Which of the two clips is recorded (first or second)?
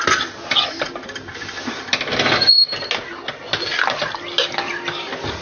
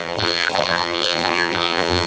first